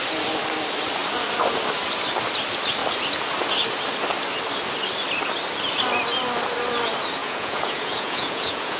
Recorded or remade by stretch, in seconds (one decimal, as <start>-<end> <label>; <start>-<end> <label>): 0.0-7.2 recorded; 7.2-8.8 remade